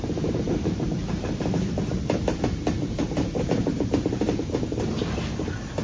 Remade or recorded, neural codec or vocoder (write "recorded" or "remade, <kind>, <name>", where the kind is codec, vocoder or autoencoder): remade, vocoder, BigVGAN v2